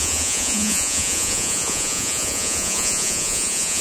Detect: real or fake fake